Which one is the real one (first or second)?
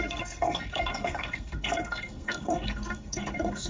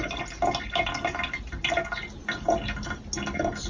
second